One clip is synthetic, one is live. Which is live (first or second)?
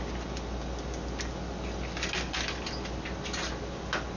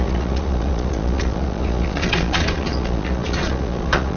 first